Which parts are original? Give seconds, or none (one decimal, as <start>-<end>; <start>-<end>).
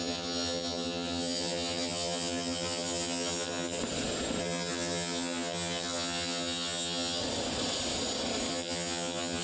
3.8-4.4; 7.2-8.5